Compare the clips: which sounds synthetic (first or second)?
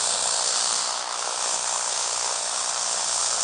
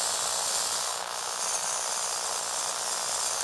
first